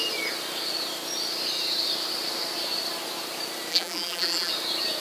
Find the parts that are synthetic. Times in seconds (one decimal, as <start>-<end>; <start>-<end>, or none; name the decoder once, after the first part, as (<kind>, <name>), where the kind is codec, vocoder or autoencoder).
3.7-4.5 (vocoder, BigVGAN v2)